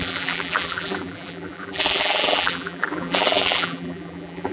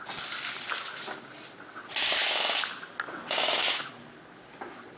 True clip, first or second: second